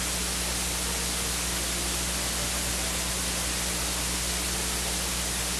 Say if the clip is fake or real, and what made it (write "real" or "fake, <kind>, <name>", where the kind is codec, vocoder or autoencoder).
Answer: real